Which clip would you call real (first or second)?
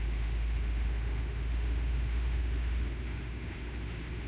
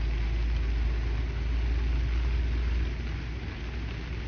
second